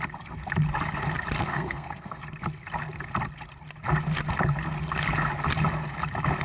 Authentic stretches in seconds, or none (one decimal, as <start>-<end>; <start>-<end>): 0.0-1.5; 2.2-6.4